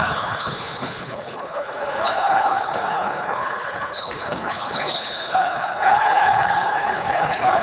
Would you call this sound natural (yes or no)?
no